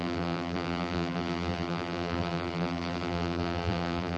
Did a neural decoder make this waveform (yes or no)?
yes